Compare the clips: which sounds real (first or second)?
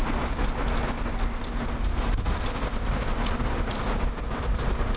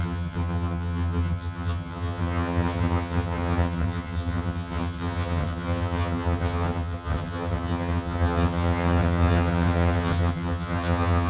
first